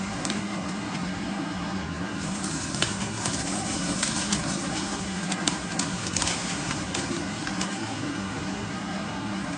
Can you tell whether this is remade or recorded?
remade